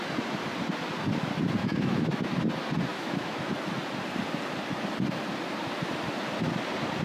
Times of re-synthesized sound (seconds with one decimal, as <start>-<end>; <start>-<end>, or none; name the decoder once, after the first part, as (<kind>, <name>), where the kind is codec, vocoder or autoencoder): 1.6-2.3 (autoencoder, DAC-VAE); 2.9-3.5